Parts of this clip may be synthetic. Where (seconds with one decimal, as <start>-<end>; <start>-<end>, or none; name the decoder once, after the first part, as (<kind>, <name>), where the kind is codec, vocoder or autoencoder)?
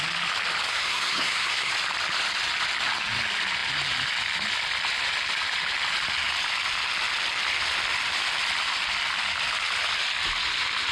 0.7-1.7 (codec, SNAC)